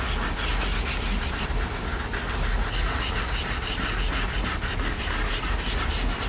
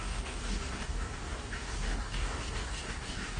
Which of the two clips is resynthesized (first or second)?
second